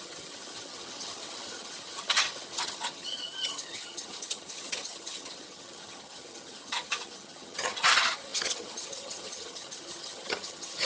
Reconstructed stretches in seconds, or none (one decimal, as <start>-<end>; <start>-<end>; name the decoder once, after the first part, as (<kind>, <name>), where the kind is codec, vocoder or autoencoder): 0.0-10.9 (vocoder, HiFi-GAN)